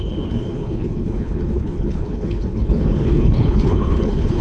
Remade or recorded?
remade